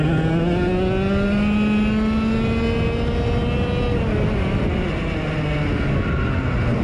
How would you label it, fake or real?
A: real